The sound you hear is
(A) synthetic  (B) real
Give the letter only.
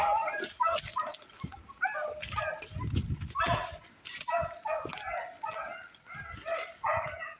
B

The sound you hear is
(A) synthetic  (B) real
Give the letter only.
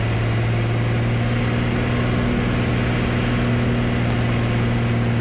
B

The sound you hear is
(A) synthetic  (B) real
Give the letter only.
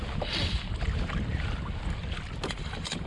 B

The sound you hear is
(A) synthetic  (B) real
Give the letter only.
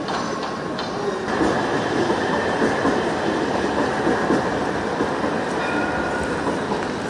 B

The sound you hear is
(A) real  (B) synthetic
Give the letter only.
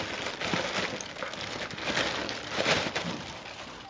A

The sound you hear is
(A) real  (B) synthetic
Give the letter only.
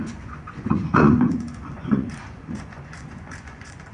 B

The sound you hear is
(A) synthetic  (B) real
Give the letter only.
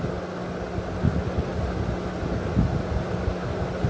B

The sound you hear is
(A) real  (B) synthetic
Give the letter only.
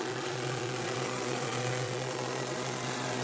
B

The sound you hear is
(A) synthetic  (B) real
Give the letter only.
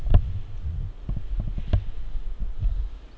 B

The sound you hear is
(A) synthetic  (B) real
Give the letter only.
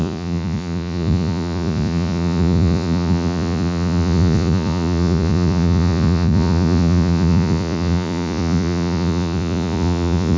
A